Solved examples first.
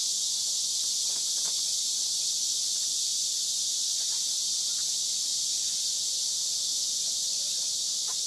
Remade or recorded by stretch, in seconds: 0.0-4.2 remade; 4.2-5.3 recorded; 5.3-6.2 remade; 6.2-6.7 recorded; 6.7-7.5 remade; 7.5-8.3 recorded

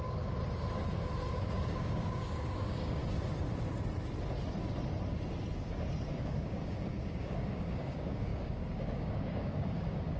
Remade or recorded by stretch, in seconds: 0.0-0.4 remade; 0.4-1.3 recorded; 1.3-3.0 remade; 3.0-6.1 recorded; 6.1-10.2 remade

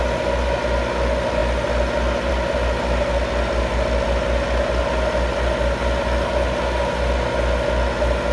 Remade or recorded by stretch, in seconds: 0.0-8.3 recorded